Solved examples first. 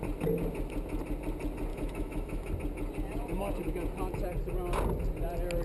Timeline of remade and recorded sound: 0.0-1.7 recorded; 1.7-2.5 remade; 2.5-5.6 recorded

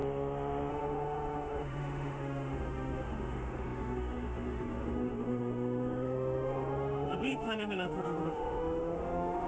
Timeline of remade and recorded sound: 0.0-0.7 recorded; 0.7-9.5 remade

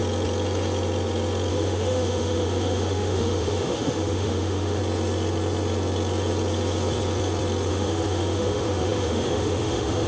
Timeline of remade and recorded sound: 0.0-1.5 recorded; 1.5-4.8 remade; 4.8-7.7 recorded; 7.7-10.1 remade

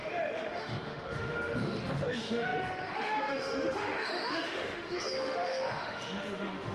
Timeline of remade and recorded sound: 0.0-6.7 remade

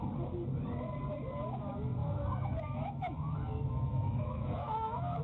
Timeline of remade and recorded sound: 0.0-2.0 recorded; 2.0-5.2 remade

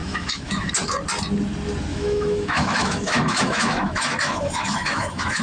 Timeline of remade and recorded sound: 0.0-0.7 remade; 0.7-1.9 recorded; 1.9-5.4 remade

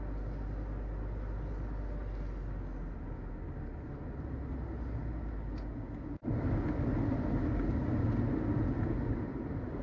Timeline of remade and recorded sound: 0.0-9.8 recorded

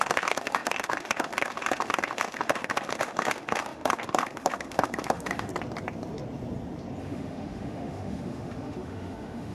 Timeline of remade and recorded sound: 0.0-5.5 remade; 5.5-7.0 recorded; 7.0-9.5 remade